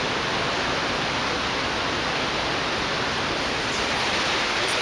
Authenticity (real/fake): real